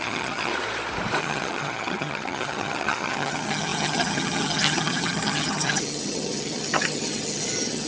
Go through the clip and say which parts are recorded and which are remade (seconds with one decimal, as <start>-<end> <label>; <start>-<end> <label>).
0.0-0.5 remade; 0.5-1.2 recorded; 1.2-7.9 remade